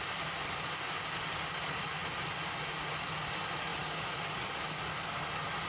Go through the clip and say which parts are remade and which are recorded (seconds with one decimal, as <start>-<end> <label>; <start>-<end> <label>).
0.0-5.7 recorded